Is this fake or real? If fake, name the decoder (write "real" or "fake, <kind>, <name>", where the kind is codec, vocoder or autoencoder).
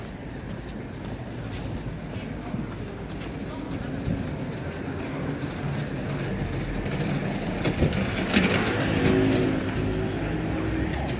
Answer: real